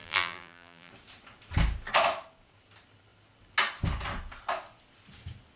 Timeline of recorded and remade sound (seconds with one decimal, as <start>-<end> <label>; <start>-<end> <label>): 0.0-0.9 remade; 0.9-5.6 recorded